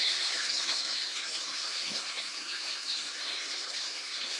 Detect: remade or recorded remade